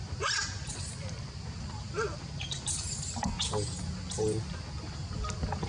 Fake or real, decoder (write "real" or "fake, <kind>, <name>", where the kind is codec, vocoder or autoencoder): real